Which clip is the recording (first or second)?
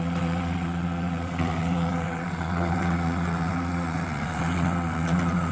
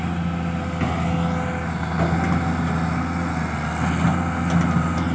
second